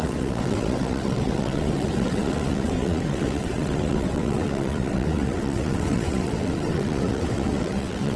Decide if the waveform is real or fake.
fake